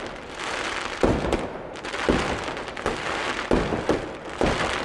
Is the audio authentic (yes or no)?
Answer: yes